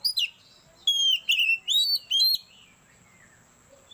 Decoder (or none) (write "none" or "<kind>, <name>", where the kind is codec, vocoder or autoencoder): none